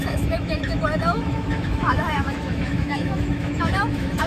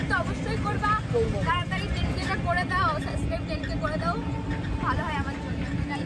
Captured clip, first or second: second